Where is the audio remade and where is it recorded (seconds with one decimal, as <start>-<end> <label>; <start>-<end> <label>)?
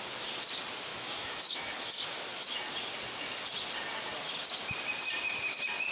0.0-0.9 recorded; 0.9-2.6 remade; 2.6-5.9 recorded